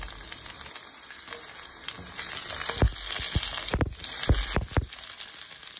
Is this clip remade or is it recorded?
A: recorded